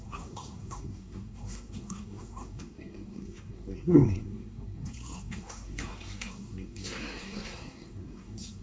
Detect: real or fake fake